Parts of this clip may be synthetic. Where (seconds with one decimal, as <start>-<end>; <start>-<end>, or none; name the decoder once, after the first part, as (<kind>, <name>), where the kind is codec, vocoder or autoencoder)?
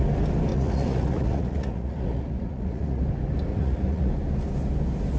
0.5-3.0 (vocoder, Vocos); 3.5-4.1